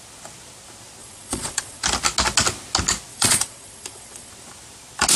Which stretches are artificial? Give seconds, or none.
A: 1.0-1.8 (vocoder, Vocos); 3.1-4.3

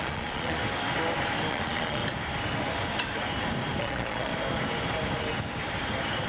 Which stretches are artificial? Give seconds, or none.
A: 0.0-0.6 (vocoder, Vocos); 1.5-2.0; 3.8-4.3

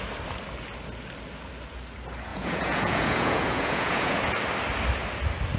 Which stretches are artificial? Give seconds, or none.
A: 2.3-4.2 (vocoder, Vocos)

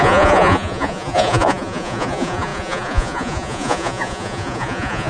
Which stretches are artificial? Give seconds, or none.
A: 0.0-5.1 (vocoder, Vocos)